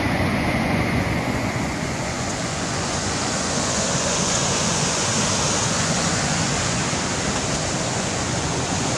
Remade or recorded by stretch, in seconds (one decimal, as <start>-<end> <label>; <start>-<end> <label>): 0.0-5.1 remade; 5.1-5.7 recorded; 5.7-6.8 remade; 6.8-7.8 recorded; 7.8-9.0 remade